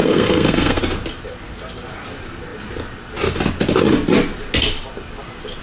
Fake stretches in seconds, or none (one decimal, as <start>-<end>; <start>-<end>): 0.0-0.8